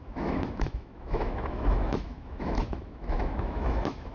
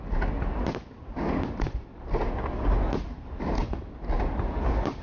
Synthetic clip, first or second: first